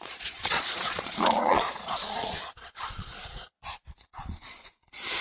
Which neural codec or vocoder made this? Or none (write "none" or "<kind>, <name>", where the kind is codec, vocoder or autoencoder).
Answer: vocoder, Vocos